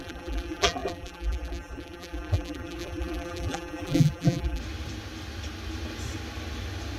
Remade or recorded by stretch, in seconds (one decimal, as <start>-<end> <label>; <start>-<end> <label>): 0.0-4.6 remade; 4.6-7.0 recorded